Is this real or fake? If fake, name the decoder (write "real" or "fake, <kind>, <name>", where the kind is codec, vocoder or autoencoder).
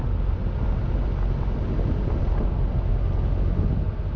real